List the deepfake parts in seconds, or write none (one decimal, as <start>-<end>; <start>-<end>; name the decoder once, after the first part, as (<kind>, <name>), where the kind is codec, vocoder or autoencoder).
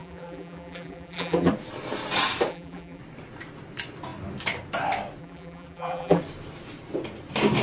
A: 0.0-1.5 (vocoder, BigVGAN v2); 2.5-3.0; 5.2-6.2